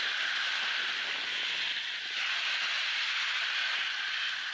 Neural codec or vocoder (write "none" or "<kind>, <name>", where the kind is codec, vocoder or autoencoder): none